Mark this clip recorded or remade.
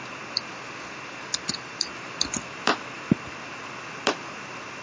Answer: recorded